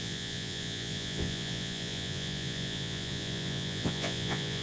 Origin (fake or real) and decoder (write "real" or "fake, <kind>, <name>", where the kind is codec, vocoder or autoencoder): fake, vocoder, Vocos